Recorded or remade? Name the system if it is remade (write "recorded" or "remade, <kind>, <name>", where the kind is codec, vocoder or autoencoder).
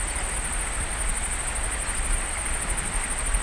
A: recorded